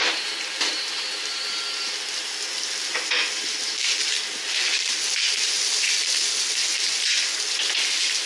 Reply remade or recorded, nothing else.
recorded